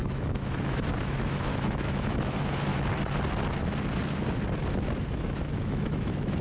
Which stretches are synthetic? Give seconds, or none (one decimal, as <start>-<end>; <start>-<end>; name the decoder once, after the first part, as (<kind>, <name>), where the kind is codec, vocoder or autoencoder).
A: 0.0-2.7 (autoencoder, DAC-VAE); 5.1-6.4